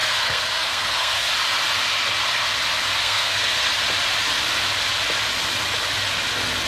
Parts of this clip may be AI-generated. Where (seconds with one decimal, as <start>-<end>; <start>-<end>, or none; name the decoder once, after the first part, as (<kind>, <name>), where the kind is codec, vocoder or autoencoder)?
0.0-1.3 (codec, SNAC); 3.0-3.7